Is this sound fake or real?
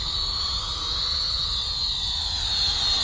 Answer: real